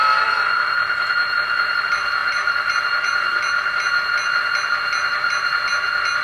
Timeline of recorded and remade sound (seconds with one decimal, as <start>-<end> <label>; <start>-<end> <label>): 0.0-3.3 remade; 3.3-6.2 recorded